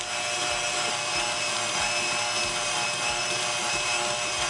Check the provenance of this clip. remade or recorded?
recorded